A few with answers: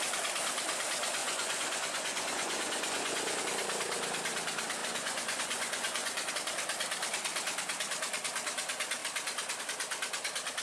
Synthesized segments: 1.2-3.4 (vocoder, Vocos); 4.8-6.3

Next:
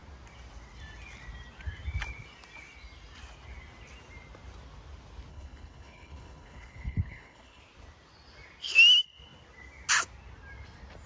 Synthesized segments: 5.3-7.6 (codec, HILCodec)

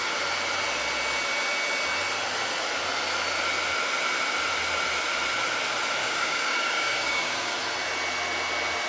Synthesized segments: 6.0-7.5 (codec, DAC)

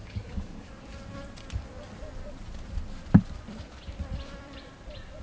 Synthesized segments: 0.0-0.7 (codec, DAC)

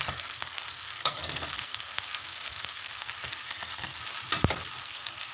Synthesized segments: 0.0-4.0 (codec, SNAC); 4.8-5.3

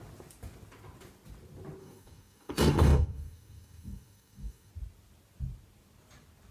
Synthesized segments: 1.8-4.7 (codec, DAC)